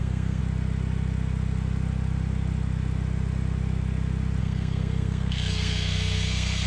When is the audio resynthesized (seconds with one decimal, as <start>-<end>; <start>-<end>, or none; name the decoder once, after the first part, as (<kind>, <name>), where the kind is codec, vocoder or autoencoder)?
0.0-0.4 (codec, SNAC); 4.4-6.7